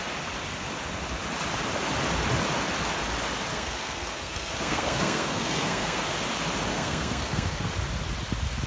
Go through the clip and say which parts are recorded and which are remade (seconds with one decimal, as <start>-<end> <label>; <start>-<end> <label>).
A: 0.0-3.5 recorded; 3.5-6.0 remade; 6.0-6.7 recorded; 6.7-7.7 remade; 7.7-8.7 recorded

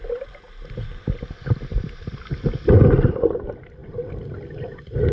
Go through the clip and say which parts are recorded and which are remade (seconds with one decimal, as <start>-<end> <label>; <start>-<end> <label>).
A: 0.0-5.1 recorded

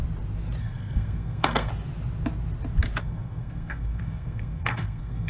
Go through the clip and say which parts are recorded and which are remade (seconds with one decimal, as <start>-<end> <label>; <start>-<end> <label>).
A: 0.0-0.6 recorded; 0.6-1.7 remade; 1.7-3.0 recorded; 3.0-5.3 remade

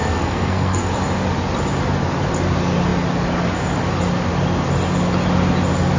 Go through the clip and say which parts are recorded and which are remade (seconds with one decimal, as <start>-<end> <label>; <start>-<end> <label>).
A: 0.0-0.9 remade; 0.9-6.0 recorded

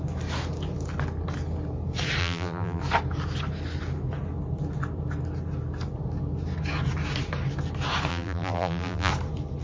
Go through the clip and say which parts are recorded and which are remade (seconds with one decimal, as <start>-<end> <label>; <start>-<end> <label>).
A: 0.0-2.2 recorded; 2.2-2.8 remade; 2.8-8.1 recorded; 8.1-9.1 remade; 9.1-9.6 recorded

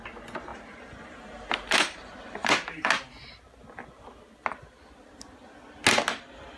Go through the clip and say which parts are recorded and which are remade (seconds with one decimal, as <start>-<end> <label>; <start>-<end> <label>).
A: 0.0-0.5 recorded; 0.5-2.9 remade; 2.9-6.6 recorded